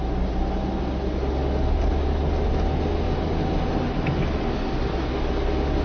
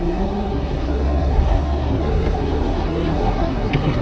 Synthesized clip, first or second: second